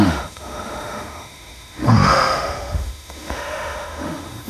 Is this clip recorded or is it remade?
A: remade